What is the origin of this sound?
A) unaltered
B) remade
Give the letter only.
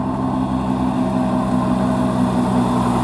A